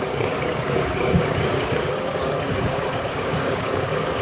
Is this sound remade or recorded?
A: remade